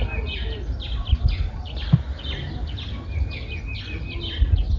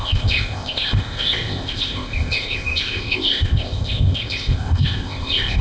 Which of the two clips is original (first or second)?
first